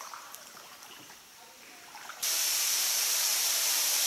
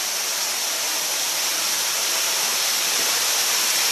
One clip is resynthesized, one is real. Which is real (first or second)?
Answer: second